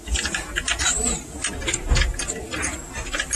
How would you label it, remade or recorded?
recorded